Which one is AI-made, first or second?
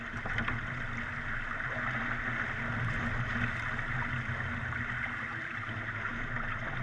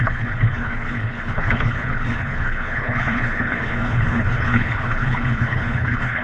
second